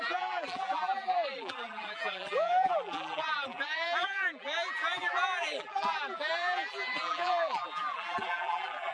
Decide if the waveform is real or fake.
fake